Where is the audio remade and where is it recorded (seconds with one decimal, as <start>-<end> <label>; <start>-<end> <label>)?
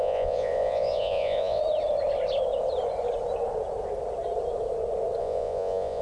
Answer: 0.0-1.6 remade; 1.6-5.2 recorded; 5.2-6.0 remade